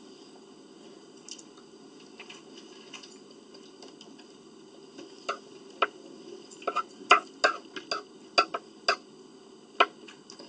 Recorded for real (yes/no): yes